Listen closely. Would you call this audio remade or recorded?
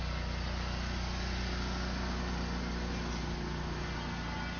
recorded